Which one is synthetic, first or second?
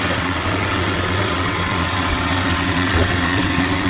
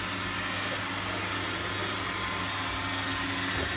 first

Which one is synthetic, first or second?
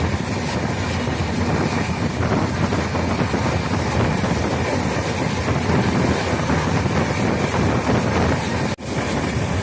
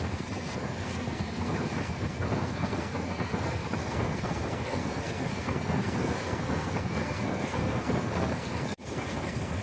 second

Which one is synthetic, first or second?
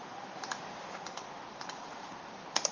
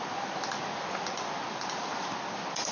first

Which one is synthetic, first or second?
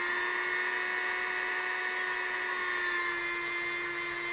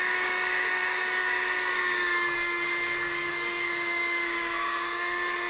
second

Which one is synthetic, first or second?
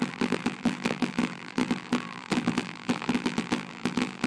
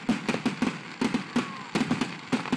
first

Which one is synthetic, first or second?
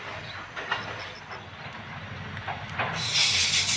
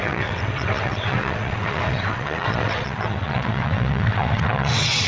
second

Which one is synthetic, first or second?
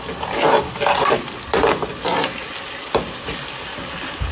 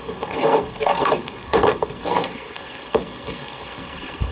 second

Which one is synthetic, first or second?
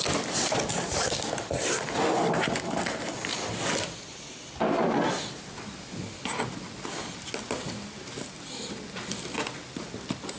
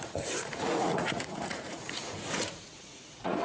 second